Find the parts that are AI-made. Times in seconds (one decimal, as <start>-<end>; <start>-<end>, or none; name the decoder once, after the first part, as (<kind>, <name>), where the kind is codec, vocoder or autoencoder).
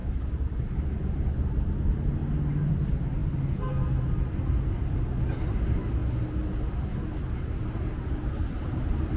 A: none